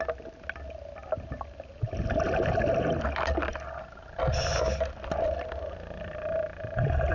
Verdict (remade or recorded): recorded